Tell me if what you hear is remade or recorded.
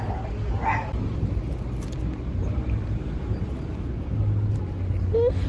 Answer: recorded